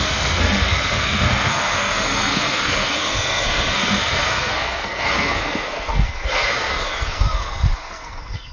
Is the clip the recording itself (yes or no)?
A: no